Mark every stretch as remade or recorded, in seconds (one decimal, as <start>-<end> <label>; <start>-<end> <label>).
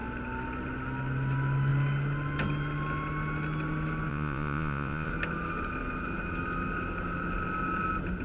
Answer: 0.0-4.1 recorded; 4.1-5.1 remade; 5.1-8.2 recorded